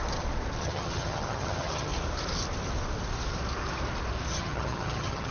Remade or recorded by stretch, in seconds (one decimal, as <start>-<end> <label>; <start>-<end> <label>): 0.0-0.6 recorded; 0.6-1.9 remade; 1.9-4.3 recorded; 4.3-5.3 remade

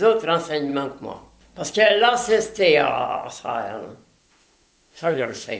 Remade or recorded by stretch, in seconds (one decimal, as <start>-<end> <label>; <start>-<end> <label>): 0.0-4.2 recorded; 4.2-5.6 remade

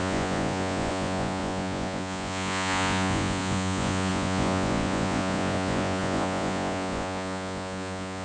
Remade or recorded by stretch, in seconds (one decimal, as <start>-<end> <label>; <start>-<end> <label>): 0.0-8.2 remade